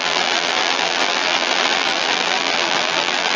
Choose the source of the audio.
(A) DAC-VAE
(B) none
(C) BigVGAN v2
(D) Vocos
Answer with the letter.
C